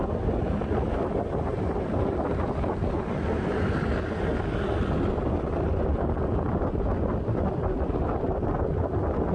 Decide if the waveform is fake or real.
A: real